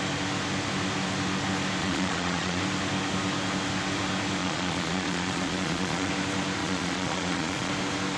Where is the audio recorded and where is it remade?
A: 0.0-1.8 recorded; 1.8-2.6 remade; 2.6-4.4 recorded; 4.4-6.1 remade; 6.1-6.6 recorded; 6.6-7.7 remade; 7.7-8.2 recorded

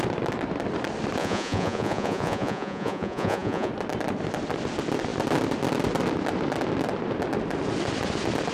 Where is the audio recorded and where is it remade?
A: 0.0-1.2 recorded; 1.2-3.7 remade; 3.7-8.5 recorded

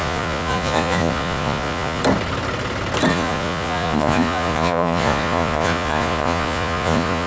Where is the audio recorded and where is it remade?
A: 0.0-2.0 remade; 2.0-3.1 recorded; 3.1-7.3 remade

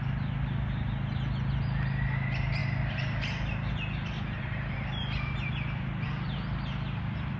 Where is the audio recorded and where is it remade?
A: 0.0-7.4 recorded

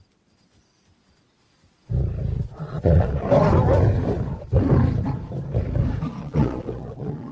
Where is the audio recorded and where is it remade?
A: 0.0-2.5 recorded; 2.5-3.2 remade; 3.2-6.2 recorded; 6.2-7.3 remade

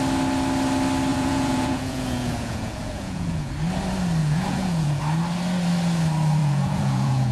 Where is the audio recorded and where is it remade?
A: 0.0-1.1 recorded; 1.1-3.5 remade; 3.5-4.2 recorded; 4.2-5.0 remade; 5.0-6.4 recorded; 6.4-7.3 remade